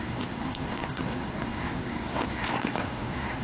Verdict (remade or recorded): remade